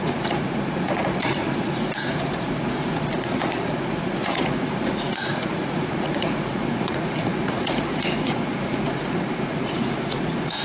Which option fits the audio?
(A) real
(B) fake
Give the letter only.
B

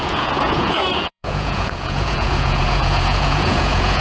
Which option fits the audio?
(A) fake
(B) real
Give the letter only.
A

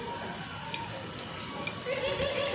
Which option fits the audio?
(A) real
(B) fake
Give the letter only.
A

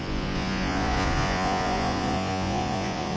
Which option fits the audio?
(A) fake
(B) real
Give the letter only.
A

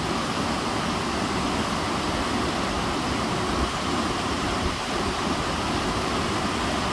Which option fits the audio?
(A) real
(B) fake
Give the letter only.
A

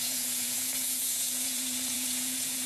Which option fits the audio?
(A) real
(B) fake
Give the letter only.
B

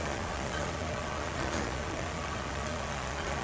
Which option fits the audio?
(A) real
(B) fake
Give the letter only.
B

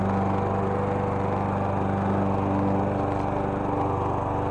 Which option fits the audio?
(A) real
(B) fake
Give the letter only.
A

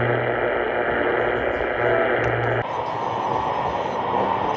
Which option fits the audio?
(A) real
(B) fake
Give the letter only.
A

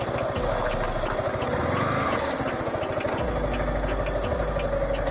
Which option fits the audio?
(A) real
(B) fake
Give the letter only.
A